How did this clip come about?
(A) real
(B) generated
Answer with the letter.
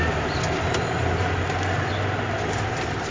A